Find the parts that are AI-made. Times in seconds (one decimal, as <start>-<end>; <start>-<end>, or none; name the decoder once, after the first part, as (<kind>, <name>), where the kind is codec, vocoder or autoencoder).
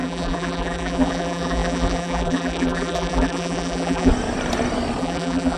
0.0-4.1 (vocoder, BigVGAN v2); 5.0-5.6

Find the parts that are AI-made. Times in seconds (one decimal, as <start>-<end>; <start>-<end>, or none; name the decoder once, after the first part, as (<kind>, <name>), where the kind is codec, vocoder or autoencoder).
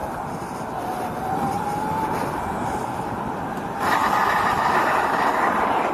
none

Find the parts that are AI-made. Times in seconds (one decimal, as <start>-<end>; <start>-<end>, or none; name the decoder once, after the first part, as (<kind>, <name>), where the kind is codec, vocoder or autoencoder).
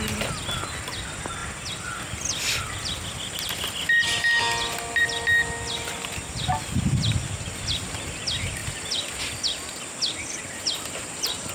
none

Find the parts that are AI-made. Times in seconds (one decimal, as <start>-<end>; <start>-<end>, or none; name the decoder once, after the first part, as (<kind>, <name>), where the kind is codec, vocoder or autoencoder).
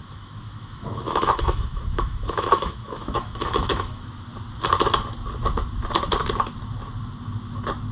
0.0-4.1 (autoencoder, DAC-VAE)